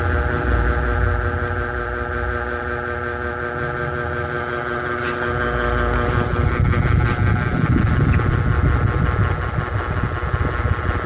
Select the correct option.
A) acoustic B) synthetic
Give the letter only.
A